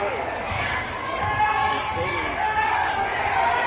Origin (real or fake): fake